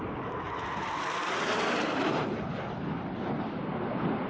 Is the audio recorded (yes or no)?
no